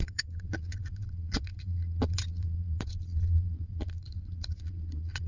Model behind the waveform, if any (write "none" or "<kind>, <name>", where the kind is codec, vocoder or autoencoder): vocoder, Vocos